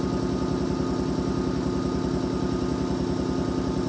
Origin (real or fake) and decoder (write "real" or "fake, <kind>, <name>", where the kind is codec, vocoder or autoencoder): real